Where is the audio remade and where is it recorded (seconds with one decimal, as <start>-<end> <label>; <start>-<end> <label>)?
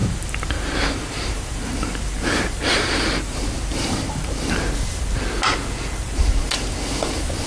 0.0-4.5 remade; 4.5-7.5 recorded